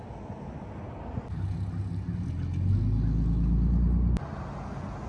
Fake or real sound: real